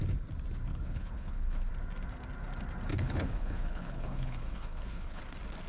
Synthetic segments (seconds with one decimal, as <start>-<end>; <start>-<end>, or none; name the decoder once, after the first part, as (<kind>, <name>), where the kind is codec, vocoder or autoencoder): 0.7-1.7 (codec, HILCodec); 2.9-5.2